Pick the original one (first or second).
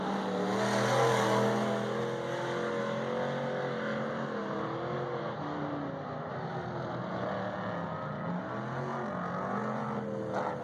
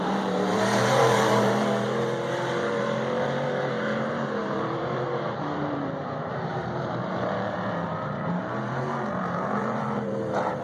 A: first